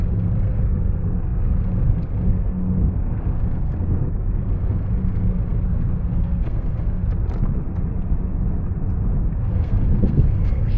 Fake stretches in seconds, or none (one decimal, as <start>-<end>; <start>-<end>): 0.0-7.0; 9.4-10.8